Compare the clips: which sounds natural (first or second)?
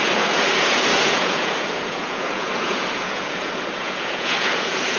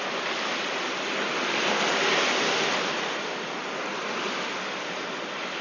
second